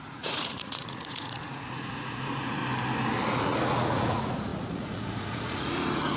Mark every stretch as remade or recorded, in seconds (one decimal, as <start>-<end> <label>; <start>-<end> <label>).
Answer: 0.0-2.6 remade; 2.6-3.4 recorded; 3.4-6.2 remade